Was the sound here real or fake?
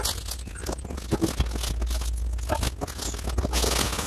real